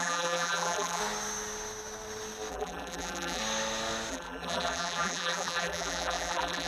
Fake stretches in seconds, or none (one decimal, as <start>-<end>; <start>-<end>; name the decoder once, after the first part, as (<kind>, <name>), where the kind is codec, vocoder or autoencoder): 0.0-1.0 (vocoder, BigVGAN v2); 2.5-3.4; 4.1-6.7